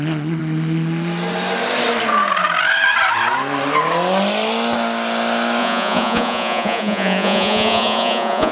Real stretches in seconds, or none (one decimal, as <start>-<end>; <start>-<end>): 0.0-5.6